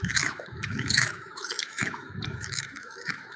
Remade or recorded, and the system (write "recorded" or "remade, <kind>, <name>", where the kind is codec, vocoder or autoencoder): remade, autoencoder, DAC-VAE